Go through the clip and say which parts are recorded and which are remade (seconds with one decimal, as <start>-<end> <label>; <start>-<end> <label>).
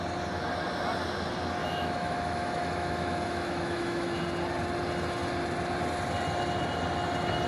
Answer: 0.0-1.6 recorded; 1.6-4.2 remade; 4.2-7.5 recorded